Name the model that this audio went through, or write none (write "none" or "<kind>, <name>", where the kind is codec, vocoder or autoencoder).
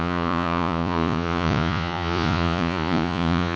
vocoder, Vocos